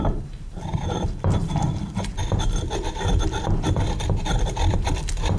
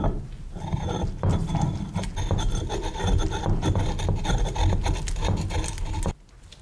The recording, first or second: second